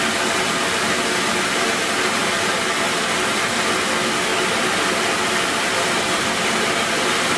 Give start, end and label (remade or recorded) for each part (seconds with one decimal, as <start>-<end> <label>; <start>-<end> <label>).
0.0-7.4 recorded